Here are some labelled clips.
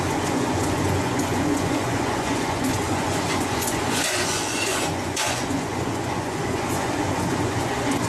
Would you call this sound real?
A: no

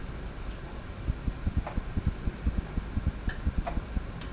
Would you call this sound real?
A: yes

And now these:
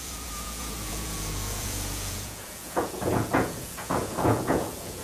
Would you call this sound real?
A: no